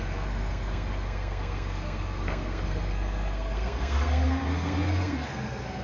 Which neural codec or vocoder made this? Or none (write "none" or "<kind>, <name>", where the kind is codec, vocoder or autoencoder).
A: codec, SNAC